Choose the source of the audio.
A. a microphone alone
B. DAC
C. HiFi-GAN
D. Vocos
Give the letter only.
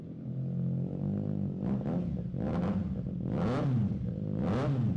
A